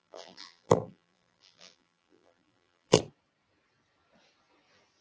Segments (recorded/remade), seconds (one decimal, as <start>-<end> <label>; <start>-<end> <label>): 0.0-3.0 remade; 3.0-5.0 recorded